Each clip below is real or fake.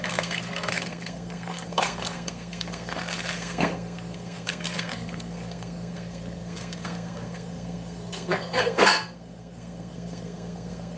fake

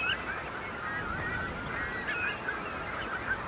real